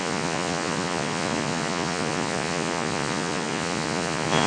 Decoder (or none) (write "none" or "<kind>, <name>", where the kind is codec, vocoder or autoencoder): vocoder, Vocos